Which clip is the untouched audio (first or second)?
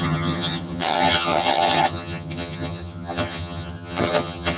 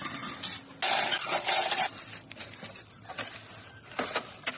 second